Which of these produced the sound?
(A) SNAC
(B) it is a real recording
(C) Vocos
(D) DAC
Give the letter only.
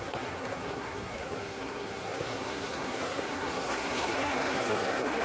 A